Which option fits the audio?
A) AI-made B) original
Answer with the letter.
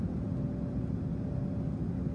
B